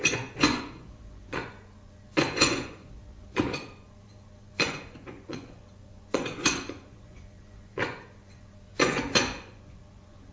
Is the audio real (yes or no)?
no